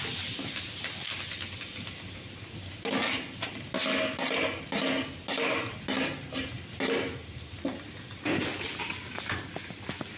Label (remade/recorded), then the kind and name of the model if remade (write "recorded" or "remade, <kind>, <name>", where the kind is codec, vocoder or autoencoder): recorded